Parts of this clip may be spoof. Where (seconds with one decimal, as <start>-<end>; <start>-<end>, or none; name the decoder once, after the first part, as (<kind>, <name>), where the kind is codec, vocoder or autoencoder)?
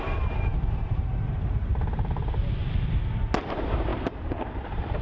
0.0-2.4 (vocoder, BigVGAN v2); 3.4-3.9; 4.5-5.0